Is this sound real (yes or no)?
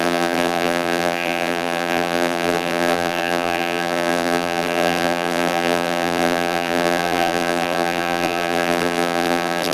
no